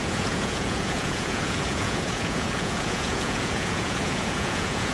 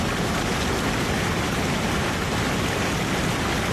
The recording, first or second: second